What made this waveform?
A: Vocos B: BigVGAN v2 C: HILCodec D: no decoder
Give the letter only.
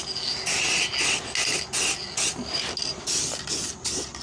D